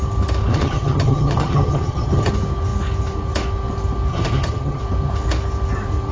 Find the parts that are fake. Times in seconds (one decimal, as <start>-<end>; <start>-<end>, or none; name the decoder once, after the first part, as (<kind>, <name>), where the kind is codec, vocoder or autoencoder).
0.5-2.3 (vocoder, HiFi-GAN); 4.1-4.8